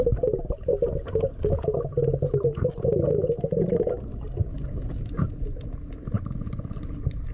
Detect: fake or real real